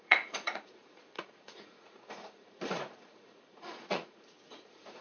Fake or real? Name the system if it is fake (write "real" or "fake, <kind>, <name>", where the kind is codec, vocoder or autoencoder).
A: fake, vocoder, Vocos